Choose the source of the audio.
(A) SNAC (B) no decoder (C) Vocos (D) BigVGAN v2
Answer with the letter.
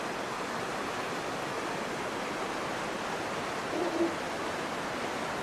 B